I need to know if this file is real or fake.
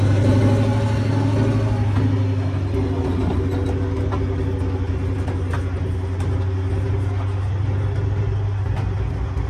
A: real